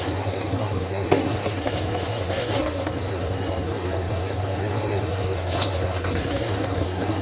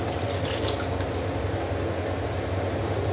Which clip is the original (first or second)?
second